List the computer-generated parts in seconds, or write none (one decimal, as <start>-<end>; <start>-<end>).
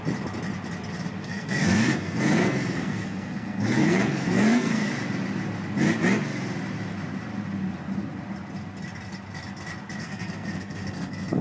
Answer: 1.2-4.9; 10.0-11.4